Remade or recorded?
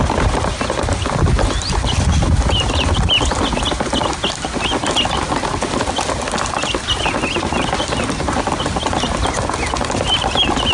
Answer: recorded